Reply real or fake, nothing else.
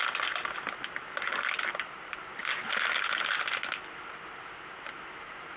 real